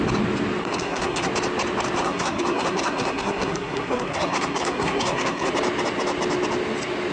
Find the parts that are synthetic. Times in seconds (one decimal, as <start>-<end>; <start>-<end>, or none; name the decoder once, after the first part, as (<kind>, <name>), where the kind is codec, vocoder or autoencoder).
0.6-1.3 (codec, SNAC); 2.0-5.5